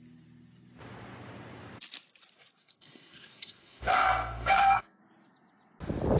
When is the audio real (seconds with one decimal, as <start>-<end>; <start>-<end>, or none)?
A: 0.0-2.6; 5.0-6.2